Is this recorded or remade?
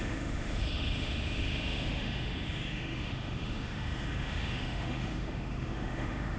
remade